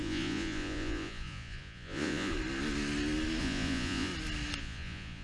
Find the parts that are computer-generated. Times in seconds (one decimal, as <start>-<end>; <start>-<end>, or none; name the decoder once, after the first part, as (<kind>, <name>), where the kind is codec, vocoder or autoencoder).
0.0-2.3 (vocoder, Vocos); 3.4-4.1; 4.6-5.2